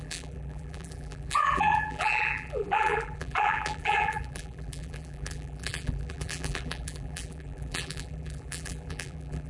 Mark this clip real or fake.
fake